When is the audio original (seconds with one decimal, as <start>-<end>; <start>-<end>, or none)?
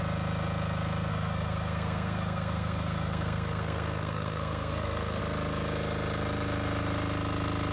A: 0.0-1.1; 5.2-7.7